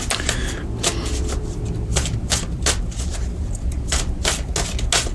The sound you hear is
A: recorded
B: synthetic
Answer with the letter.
A